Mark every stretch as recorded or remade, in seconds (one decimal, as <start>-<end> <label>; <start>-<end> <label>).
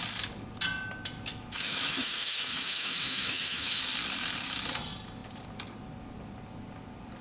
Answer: 0.0-1.3 recorded; 1.3-3.8 remade; 3.8-7.2 recorded